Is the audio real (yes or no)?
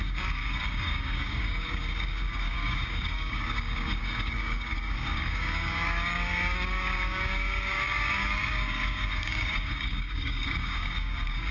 no